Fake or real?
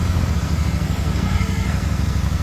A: fake